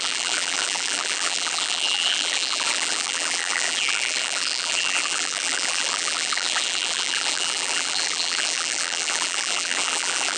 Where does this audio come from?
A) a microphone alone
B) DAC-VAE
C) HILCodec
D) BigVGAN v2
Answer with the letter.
D